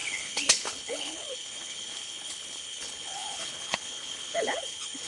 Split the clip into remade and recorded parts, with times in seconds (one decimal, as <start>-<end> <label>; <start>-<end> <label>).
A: 0.0-5.1 remade